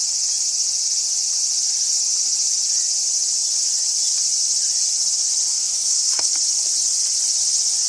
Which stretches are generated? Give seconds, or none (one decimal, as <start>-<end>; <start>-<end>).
5.5-6.3